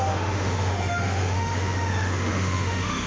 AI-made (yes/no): yes